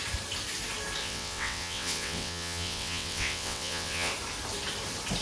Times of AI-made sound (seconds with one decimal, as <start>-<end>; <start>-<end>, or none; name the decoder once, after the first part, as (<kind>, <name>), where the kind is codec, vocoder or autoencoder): 1.0-4.1 (vocoder, WaveNeXt)